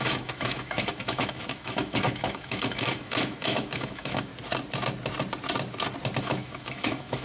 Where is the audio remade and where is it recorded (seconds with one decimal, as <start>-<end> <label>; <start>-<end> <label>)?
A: 0.0-4.3 remade; 4.3-6.2 recorded; 6.2-7.2 remade